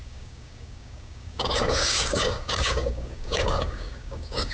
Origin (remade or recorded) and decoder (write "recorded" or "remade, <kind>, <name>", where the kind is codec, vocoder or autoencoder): remade, codec, DAC